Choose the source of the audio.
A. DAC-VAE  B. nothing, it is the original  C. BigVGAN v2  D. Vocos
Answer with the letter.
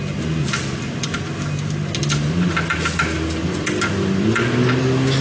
B